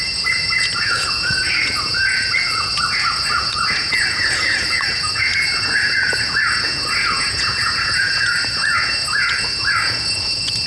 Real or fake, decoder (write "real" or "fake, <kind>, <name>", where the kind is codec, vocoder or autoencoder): fake, vocoder, Vocos